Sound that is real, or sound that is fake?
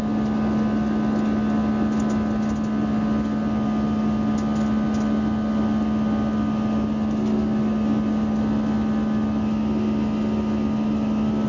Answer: real